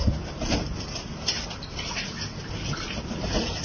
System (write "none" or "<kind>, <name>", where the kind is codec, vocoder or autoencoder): none